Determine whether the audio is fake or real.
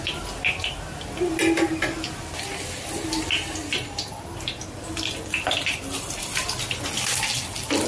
real